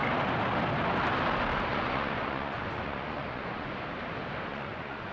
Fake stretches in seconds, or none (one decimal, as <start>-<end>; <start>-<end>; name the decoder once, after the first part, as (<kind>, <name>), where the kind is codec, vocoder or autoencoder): 1.7-3.7 (vocoder, Vocos); 4.5-5.1